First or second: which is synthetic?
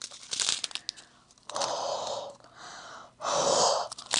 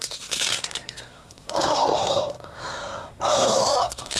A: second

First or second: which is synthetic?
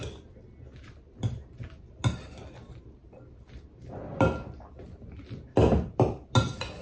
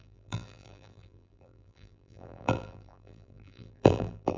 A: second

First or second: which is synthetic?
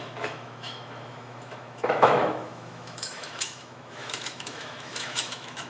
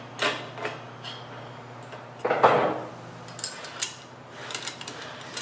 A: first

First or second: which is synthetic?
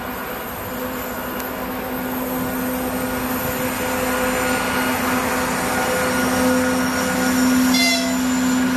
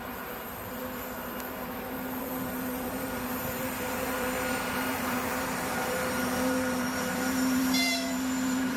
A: second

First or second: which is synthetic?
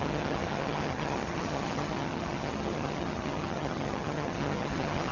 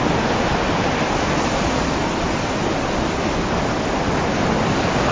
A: first